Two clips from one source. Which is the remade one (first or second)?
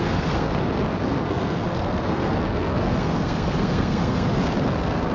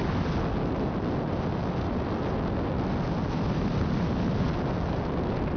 first